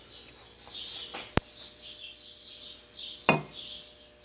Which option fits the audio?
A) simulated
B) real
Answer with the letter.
B